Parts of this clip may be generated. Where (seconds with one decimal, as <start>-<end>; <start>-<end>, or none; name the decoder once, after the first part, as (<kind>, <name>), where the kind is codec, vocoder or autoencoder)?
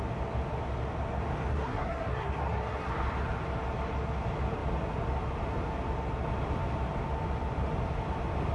1.5-2.9 (codec, SNAC)